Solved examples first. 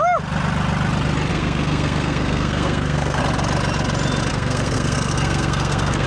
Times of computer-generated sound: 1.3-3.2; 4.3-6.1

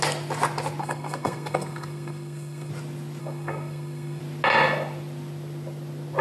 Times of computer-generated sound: 0.8-2.7; 3.2-4.2

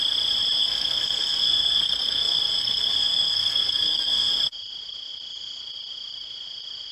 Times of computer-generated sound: 0.6-4.3

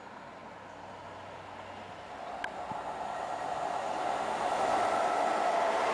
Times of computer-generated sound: none

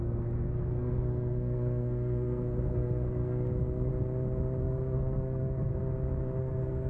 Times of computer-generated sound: 0.0-3.9; 4.6-5.7; 6.4-6.9

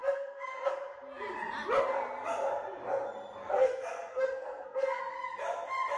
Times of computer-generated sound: 0.0-0.7; 3.4-5.0